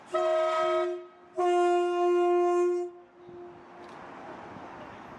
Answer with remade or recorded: recorded